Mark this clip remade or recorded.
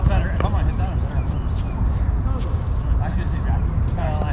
recorded